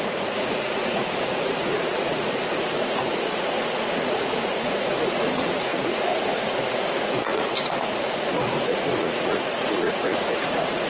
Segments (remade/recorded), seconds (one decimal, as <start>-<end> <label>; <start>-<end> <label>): 0.0-10.9 remade